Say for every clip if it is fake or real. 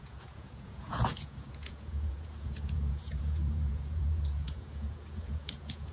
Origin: fake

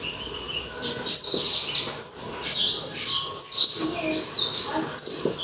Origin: fake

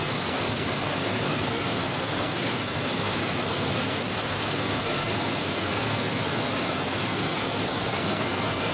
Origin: fake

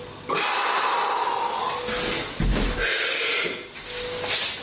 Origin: real